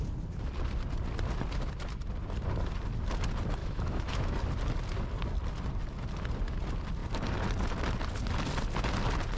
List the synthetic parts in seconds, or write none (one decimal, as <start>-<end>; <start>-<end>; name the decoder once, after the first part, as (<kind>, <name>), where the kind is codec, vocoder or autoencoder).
3.6-4.3 (autoencoder, DAC-VAE)

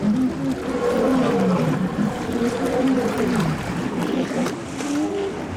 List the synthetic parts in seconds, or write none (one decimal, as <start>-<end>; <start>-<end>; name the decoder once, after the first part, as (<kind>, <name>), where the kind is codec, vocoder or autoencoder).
1.1-4.5 (vocoder, BigVGAN v2)

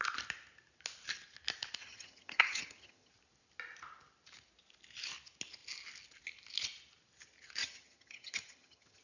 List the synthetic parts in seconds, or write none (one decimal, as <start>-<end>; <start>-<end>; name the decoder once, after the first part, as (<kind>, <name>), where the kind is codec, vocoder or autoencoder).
1.8-3.1 (vocoder, HiFi-GAN); 7.6-9.0